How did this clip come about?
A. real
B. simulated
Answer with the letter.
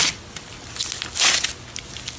A